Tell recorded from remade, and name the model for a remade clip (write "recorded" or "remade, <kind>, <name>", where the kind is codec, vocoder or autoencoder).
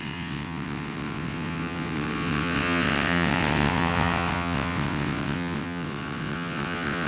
remade, vocoder, WaveNeXt